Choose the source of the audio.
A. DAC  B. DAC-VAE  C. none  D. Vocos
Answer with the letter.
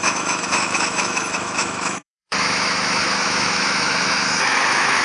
B